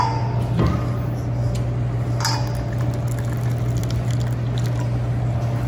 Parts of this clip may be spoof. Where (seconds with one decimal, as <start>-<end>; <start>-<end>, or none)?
none